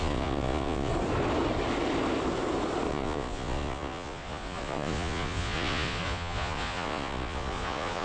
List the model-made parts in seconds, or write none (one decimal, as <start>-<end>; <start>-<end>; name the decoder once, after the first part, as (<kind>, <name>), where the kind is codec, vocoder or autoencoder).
0.0-0.9 (vocoder, Vocos); 2.9-8.0